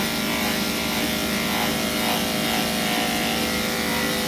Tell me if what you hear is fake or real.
real